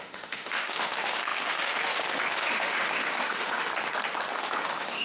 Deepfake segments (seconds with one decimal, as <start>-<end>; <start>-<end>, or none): 0.0-3.7; 4.3-5.0